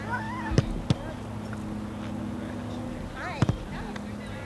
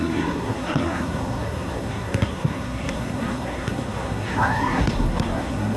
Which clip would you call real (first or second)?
first